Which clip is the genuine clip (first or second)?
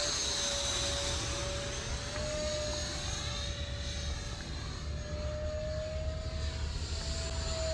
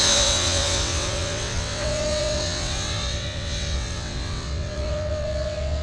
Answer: first